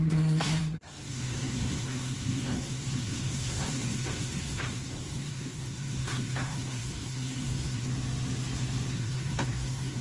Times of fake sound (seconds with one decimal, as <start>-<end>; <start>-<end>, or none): 0.0-7.9; 8.9-10.0